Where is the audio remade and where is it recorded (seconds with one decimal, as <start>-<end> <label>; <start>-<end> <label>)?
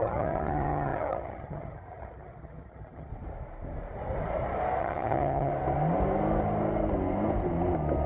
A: 0.0-3.1 remade; 3.1-4.8 recorded; 4.8-5.5 remade; 5.5-8.1 recorded